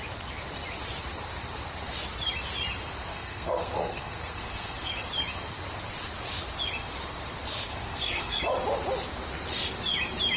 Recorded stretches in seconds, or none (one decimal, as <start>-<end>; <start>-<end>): 0.0-3.1; 4.9-7.7; 8.4-10.4